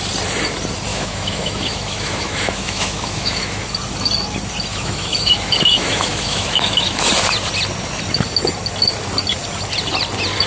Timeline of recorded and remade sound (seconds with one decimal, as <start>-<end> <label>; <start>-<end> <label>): 0.0-0.9 recorded; 0.9-3.6 remade; 3.6-4.7 recorded; 4.7-7.1 remade; 7.1-10.5 recorded